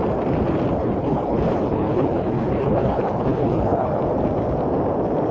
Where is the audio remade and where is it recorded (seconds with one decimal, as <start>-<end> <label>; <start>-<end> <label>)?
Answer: 0.0-0.8 recorded; 0.8-4.0 remade; 4.0-5.3 recorded